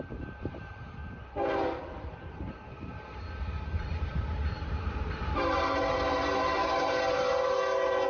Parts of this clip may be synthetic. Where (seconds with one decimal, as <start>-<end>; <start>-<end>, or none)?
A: 0.0-1.0; 1.8-8.1